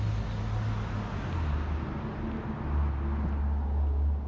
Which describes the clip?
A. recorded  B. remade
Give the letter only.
A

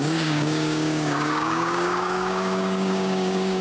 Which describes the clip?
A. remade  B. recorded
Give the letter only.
A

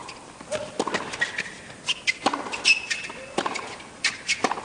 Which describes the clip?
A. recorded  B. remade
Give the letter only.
A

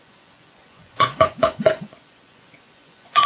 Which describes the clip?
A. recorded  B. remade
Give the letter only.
B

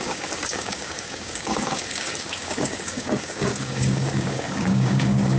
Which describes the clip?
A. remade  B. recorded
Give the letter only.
A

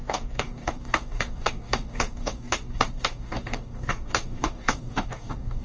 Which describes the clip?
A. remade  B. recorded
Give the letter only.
A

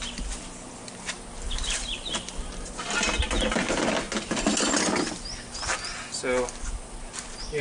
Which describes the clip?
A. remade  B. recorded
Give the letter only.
B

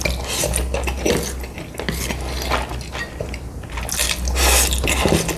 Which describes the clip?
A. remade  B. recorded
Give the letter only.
B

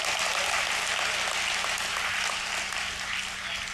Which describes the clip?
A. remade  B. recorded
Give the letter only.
B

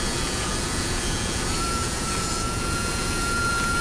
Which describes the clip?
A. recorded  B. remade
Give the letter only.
B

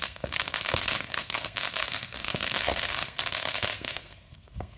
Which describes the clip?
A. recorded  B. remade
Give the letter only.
B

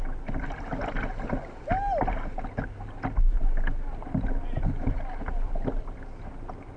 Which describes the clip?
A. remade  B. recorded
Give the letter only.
B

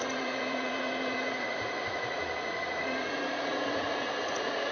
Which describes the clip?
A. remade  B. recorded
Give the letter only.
A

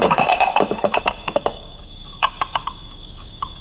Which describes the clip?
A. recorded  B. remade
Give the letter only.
B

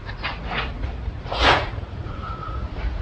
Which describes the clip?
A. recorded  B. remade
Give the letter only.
B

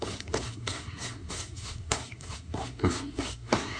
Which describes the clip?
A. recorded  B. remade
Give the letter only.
B